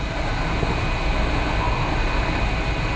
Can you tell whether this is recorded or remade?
recorded